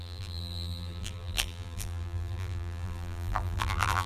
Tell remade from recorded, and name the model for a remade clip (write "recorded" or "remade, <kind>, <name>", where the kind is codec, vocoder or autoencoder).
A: remade, vocoder, BigVGAN v2